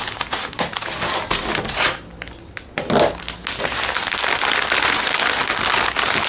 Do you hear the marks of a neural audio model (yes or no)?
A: no